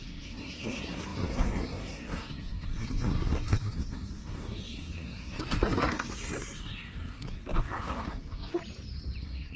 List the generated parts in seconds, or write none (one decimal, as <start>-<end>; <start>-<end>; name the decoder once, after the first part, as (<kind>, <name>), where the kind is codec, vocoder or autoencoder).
0.0-8.6 (codec, SNAC); 9.2-9.6